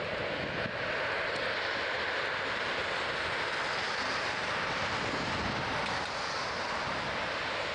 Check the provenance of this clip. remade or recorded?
recorded